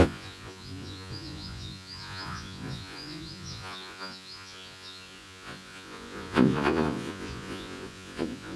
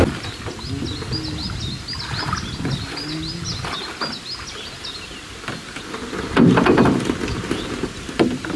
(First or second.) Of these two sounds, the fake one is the first